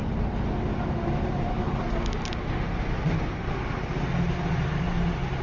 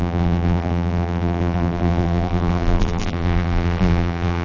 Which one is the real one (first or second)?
first